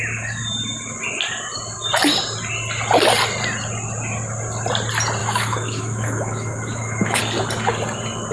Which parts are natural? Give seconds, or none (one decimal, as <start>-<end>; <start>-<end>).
0.0-5.2; 7.2-8.3